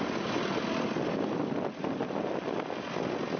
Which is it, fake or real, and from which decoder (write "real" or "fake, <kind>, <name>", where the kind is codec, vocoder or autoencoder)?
real